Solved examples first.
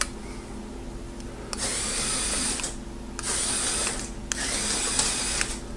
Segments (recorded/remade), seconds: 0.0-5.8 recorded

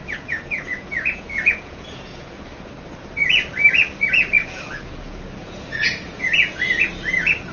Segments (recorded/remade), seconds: 0.0-2.7 remade; 2.7-4.4 recorded; 4.4-6.9 remade; 6.9-7.5 recorded

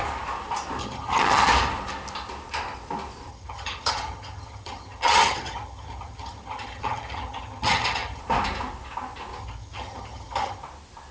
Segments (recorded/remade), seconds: 0.0-0.8 recorded; 0.8-1.5 remade; 1.5-3.3 recorded; 3.3-8.2 remade; 8.2-9.4 recorded; 9.4-10.6 remade; 10.6-11.1 recorded

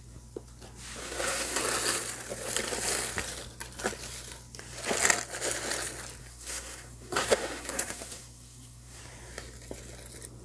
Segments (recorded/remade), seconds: 0.0-1.0 recorded; 1.0-1.6 remade; 1.6-6.2 recorded; 6.2-9.0 remade; 9.0-10.4 recorded

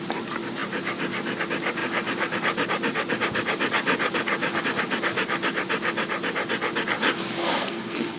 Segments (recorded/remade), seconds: 0.0-7.4 recorded; 7.4-8.2 remade